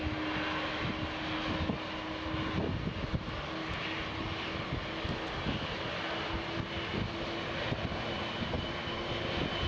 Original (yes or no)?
yes